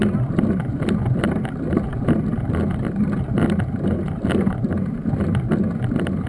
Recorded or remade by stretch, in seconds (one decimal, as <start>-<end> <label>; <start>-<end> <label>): 0.0-6.3 recorded